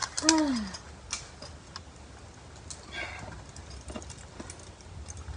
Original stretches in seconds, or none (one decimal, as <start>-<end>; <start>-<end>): 0.0-5.4